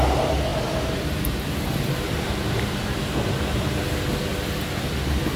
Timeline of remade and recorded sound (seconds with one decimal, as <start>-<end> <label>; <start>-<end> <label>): 0.0-0.5 recorded; 0.5-3.7 remade; 3.7-5.4 recorded